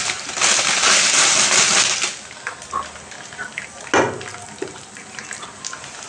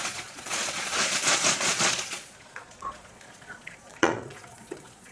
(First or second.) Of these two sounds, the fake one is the second